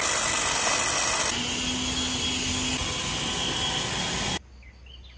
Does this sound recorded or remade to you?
recorded